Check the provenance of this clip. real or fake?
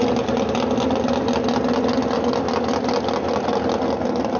real